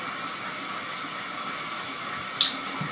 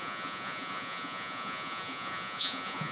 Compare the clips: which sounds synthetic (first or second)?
second